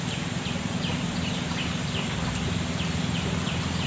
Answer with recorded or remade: recorded